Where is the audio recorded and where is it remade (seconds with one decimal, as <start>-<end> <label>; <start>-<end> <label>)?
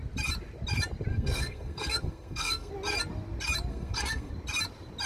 0.0-1.1 recorded; 1.1-2.7 remade; 2.7-3.7 recorded; 3.7-4.3 remade; 4.3-5.1 recorded